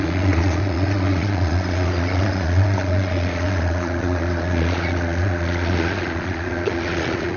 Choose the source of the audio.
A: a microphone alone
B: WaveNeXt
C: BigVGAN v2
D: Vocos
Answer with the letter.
D